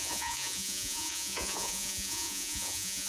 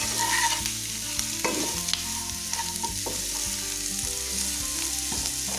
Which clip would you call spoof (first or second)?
first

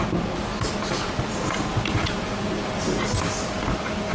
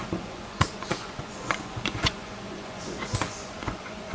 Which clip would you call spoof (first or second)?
second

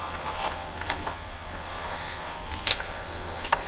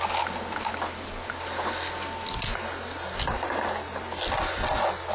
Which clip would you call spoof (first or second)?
first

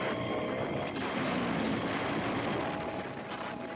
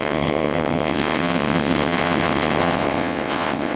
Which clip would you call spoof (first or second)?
second